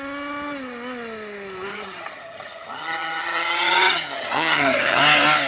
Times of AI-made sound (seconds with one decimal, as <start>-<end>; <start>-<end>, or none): 1.7-5.0